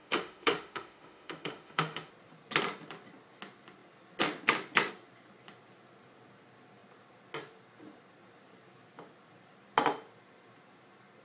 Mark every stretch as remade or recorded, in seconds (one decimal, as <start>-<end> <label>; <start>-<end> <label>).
0.0-2.1 remade; 2.1-11.2 recorded